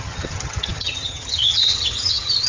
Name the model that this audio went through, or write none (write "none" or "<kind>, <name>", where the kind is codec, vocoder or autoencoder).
vocoder, HiFi-GAN